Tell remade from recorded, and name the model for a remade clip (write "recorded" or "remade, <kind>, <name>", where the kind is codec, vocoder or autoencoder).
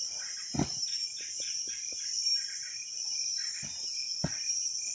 recorded